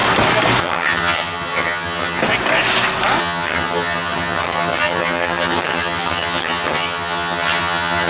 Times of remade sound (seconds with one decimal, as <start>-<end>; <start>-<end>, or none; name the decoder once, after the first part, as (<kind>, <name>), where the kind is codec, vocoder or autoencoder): 0.6-2.2 (vocoder, HiFi-GAN); 3.2-8.1